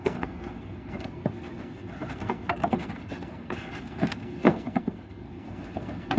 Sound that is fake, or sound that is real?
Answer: fake